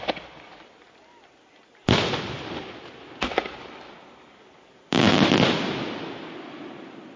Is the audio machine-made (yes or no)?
no